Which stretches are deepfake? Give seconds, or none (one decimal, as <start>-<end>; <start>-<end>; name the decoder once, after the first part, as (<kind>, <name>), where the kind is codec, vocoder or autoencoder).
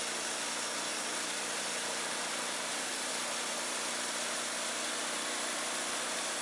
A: 0.9-3.1 (vocoder, BigVGAN v2)